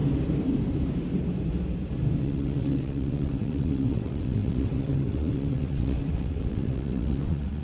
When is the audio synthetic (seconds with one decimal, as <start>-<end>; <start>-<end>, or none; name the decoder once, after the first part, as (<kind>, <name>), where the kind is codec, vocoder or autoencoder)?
2.2-7.6 (vocoder, WaveNeXt)